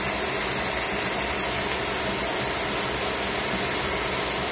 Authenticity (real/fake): real